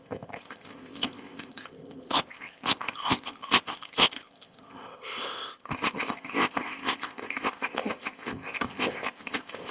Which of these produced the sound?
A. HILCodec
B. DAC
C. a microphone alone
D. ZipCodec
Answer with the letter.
D